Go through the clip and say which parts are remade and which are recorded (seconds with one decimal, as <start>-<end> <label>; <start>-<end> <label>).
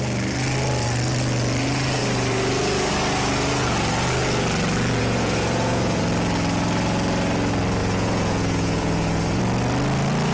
0.0-5.0 recorded; 5.0-6.0 remade; 6.0-7.8 recorded; 7.8-9.4 remade; 9.4-10.3 recorded